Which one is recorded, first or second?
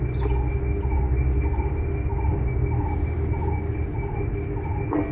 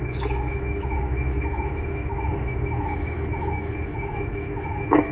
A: first